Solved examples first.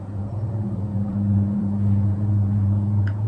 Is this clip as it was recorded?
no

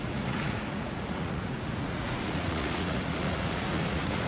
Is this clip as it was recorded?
no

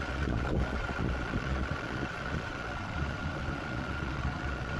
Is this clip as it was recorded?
no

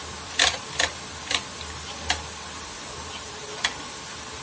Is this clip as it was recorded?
yes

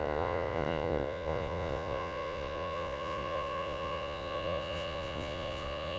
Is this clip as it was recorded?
no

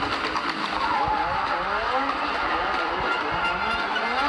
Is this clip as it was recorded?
yes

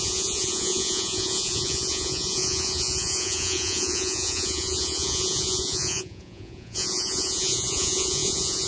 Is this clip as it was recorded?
no